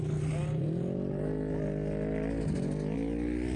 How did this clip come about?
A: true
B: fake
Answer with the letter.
A